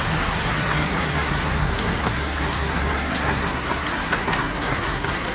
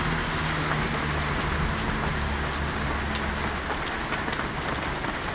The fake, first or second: first